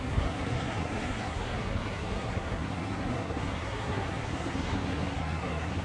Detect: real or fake fake